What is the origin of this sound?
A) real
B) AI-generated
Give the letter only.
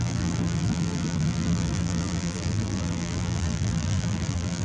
B